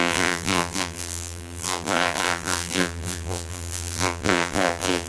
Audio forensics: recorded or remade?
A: remade